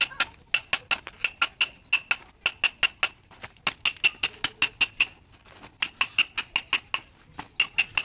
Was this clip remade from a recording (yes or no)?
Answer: no